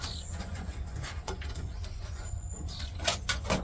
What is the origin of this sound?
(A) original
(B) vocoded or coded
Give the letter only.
B